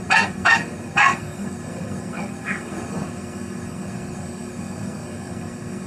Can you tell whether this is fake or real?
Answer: fake